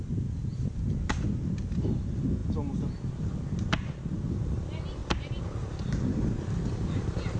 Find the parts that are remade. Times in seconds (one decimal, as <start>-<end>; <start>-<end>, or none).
none